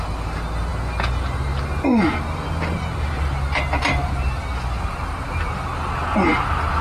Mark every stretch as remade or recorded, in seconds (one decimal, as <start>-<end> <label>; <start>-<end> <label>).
0.0-6.8 recorded